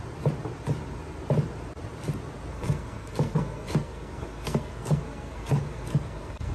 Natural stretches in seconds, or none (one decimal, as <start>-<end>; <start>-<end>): 0.0-2.5